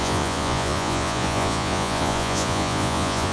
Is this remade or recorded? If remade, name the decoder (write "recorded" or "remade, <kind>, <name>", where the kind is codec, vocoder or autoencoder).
remade, vocoder, Vocos